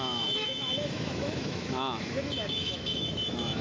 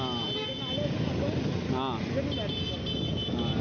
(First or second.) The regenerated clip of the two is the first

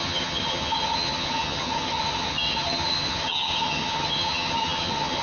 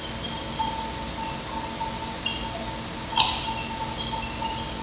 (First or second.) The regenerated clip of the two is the first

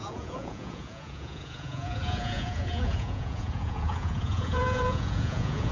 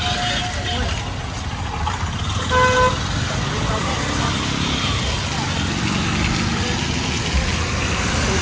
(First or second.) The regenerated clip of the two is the first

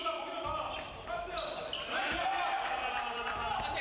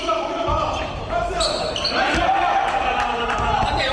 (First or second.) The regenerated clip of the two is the second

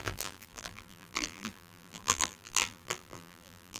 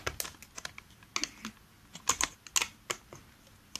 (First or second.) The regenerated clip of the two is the first